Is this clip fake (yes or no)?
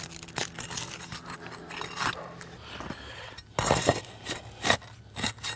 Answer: no